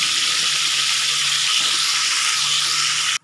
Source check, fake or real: real